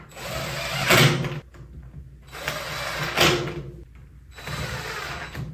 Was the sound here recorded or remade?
recorded